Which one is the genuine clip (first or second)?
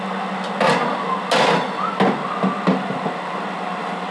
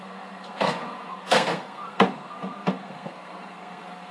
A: first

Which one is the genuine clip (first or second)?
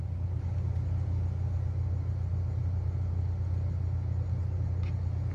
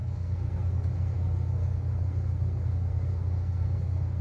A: first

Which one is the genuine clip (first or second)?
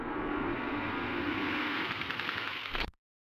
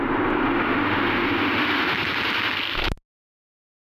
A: second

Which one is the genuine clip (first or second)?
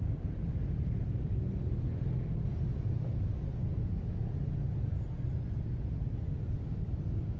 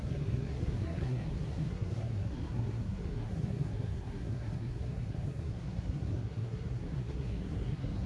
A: first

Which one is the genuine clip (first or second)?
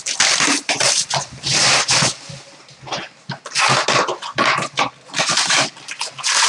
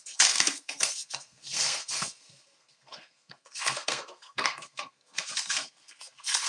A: first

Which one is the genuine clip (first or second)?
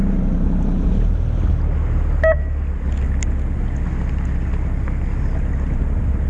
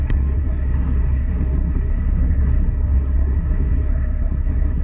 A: first